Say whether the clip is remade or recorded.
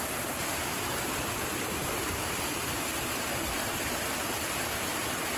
recorded